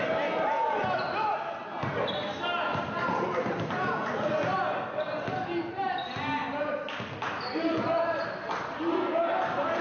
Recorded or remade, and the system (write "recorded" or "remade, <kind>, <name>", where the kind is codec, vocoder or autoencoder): recorded